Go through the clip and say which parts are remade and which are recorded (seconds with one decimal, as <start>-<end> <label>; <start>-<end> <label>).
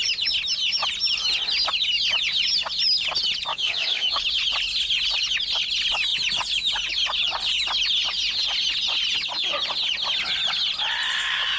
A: 0.0-3.5 recorded; 3.5-4.2 remade; 4.2-11.6 recorded